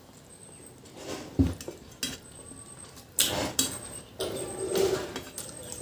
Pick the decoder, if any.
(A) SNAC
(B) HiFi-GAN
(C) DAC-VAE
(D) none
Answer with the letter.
D